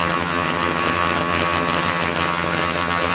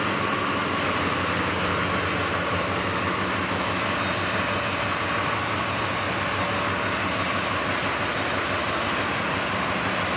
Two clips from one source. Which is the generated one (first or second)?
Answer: first